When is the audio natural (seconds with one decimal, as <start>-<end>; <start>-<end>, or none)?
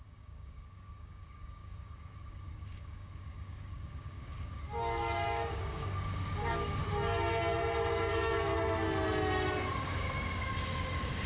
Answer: 6.8-7.9; 8.5-9.8